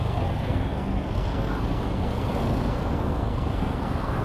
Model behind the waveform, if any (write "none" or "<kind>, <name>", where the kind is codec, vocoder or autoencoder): codec, SNAC